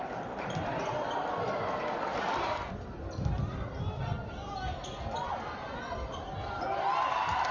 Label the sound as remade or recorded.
recorded